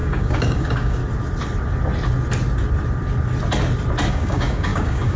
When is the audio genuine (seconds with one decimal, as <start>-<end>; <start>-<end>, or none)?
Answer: 1.0-4.1